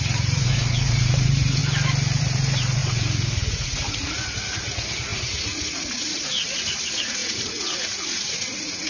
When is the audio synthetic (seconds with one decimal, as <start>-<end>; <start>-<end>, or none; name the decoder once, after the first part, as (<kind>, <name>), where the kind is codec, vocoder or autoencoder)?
0.0-1.6 (vocoder, Vocos); 2.2-8.9